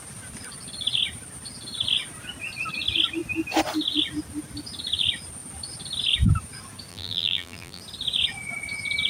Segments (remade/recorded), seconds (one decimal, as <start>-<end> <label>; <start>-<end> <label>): 0.0-6.9 recorded; 6.9-7.8 remade; 7.8-9.1 recorded